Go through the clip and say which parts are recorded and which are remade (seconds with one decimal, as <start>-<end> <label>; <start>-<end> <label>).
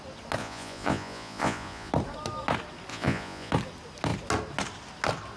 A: 0.0-0.4 recorded; 0.4-1.9 remade; 1.9-2.9 recorded; 2.9-3.5 remade; 3.5-5.4 recorded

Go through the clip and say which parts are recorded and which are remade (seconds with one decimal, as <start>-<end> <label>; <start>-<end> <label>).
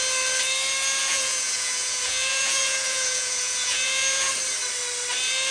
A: 0.0-1.0 recorded; 1.0-4.3 remade; 4.3-5.5 recorded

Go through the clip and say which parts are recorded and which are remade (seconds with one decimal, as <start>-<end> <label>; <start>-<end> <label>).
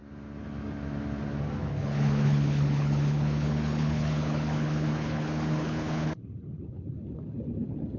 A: 0.0-1.7 recorded; 1.7-8.0 remade